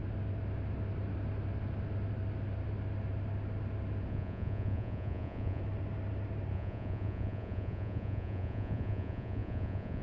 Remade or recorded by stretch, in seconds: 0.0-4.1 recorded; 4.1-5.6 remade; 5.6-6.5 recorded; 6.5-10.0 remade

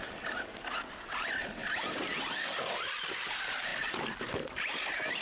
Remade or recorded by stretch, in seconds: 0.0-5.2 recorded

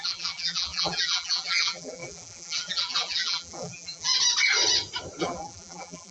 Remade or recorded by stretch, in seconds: 0.0-4.1 remade; 4.1-5.2 recorded; 5.2-6.1 remade

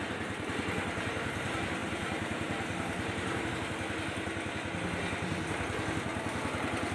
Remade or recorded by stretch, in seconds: 0.0-1.8 recorded; 1.8-3.5 remade; 3.5-6.1 recorded; 6.1-6.9 remade